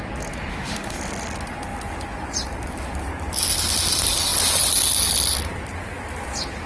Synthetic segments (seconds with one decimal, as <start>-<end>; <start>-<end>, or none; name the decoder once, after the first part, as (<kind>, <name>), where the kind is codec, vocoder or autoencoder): 0.5-1.0 (autoencoder, DAC-VAE)